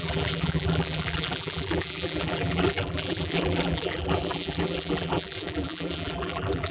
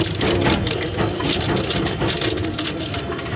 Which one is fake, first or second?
first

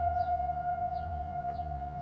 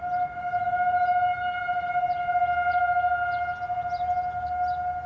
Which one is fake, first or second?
first